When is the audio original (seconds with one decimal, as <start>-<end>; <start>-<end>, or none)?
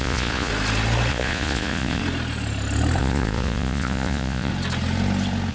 0.5-1.1; 2.0-3.0; 4.5-5.5